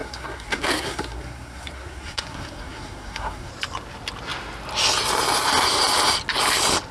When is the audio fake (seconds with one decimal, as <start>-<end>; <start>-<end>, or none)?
0.0-3.5